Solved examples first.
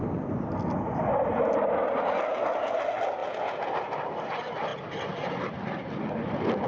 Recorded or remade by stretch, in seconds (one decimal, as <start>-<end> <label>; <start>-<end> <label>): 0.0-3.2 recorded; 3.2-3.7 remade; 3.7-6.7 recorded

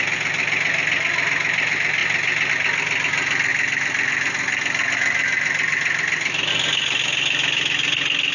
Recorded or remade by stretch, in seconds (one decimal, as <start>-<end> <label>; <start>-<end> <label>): 0.0-8.3 recorded

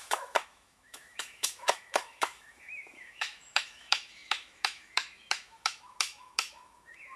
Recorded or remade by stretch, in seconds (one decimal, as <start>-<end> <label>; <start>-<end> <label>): 0.0-7.2 remade